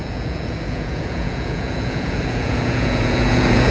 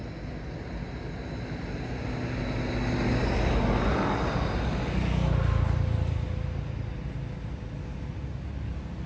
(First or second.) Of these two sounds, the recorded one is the second